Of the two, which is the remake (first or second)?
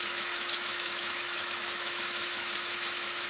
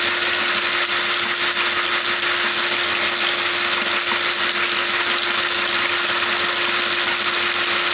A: first